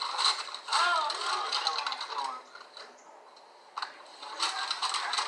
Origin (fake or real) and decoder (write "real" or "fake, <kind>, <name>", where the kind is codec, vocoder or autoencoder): fake, vocoder, BigVGAN v2